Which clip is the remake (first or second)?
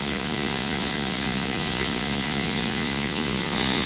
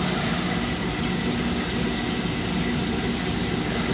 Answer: first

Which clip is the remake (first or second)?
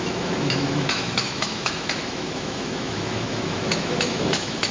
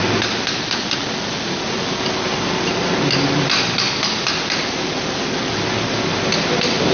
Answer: first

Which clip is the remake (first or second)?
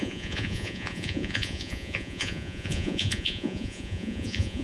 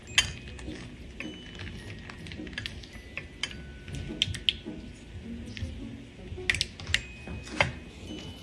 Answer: first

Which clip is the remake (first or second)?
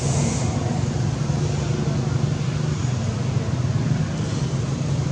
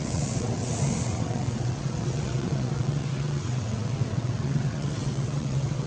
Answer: second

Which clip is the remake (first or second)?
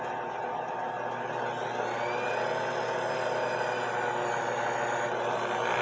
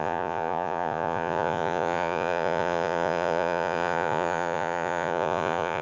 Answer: second